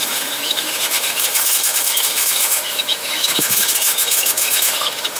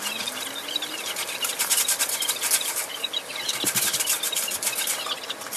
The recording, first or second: second